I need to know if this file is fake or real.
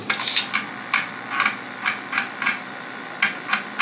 real